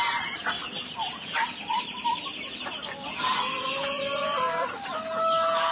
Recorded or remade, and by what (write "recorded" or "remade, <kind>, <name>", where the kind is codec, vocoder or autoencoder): recorded